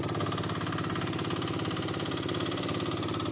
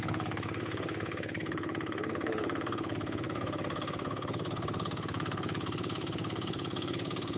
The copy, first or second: second